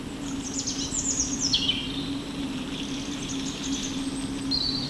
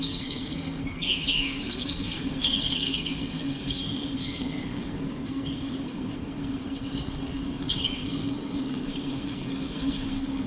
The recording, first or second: first